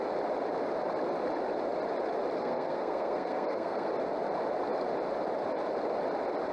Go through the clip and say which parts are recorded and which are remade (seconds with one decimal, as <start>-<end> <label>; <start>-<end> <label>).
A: 0.0-2.4 recorded; 2.4-3.9 remade; 3.9-6.5 recorded